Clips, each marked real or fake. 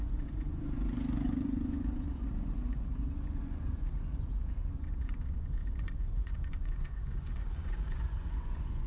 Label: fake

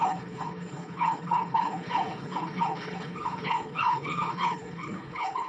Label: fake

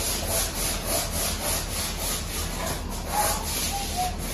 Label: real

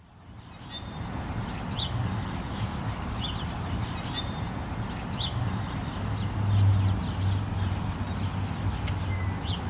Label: real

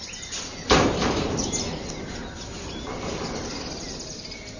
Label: real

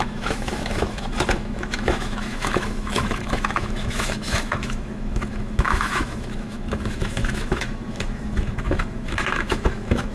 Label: fake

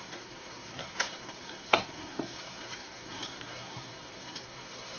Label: fake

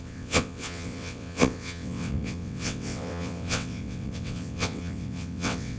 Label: fake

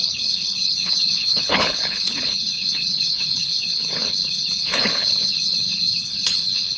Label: fake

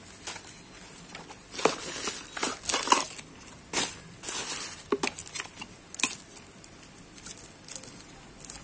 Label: real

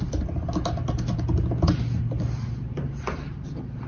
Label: real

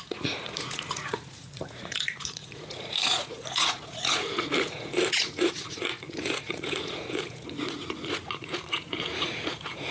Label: fake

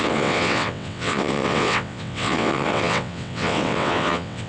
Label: fake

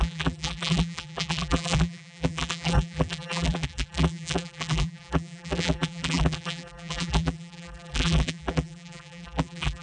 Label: fake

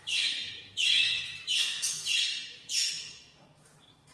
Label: fake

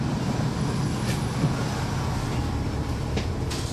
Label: real